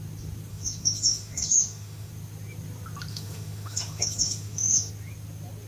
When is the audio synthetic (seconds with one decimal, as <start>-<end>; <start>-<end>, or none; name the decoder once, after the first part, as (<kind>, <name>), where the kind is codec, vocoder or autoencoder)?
0.5-2.1 (autoencoder, DAC-VAE); 3.1-4.9